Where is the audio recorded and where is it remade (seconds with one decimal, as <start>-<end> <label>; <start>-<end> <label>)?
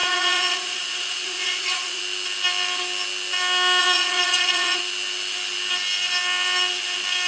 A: 0.0-2.0 remade; 2.0-3.8 recorded; 3.8-4.8 remade; 4.8-7.3 recorded